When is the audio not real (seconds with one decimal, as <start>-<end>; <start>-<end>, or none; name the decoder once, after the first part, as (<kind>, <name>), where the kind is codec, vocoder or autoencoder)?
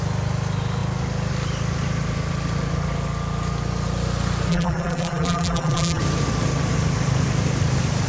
4.5-6.0 (vocoder, BigVGAN v2)